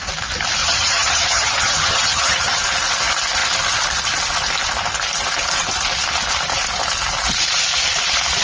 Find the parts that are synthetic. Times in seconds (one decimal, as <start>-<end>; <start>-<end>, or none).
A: 0.6-2.6